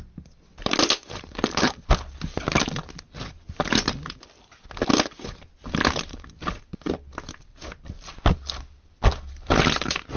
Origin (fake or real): real